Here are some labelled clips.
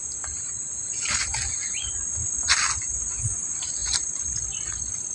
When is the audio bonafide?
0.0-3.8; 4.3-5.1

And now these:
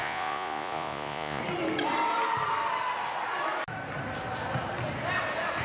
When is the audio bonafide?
1.4-5.6